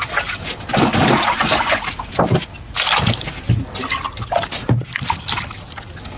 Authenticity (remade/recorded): recorded